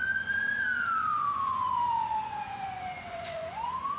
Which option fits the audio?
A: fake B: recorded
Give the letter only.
A